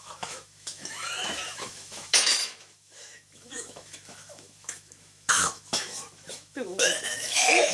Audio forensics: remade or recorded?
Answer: remade